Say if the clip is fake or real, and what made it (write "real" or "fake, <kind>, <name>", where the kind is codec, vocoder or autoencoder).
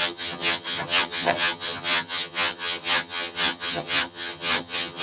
fake, vocoder, HiFi-GAN